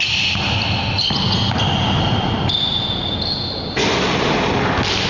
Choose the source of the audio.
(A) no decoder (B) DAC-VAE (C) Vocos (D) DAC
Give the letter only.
A